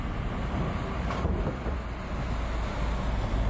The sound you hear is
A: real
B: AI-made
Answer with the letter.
A